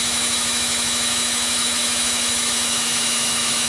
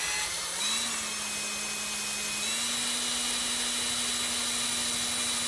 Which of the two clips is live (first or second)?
second